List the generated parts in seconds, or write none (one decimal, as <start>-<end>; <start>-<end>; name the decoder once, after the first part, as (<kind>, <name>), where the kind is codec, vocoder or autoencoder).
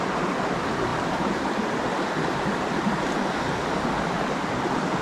none